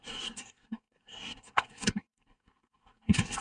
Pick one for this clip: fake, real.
fake